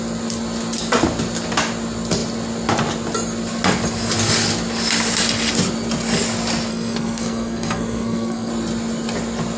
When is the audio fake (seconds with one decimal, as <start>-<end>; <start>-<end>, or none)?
6.7-8.5